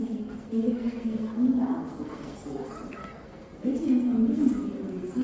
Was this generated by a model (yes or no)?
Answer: yes